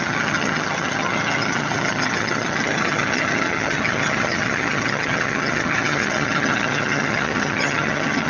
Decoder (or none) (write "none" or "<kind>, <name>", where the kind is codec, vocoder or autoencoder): vocoder, HiFi-GAN